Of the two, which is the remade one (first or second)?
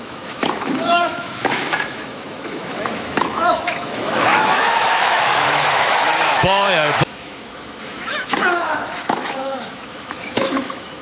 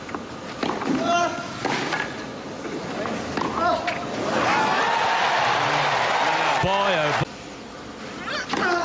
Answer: first